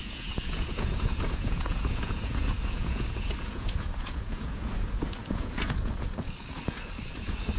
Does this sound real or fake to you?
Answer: fake